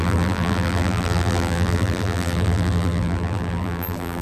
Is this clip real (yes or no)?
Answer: no